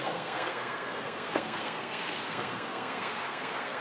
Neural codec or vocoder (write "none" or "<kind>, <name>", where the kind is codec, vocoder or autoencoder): codec, SNAC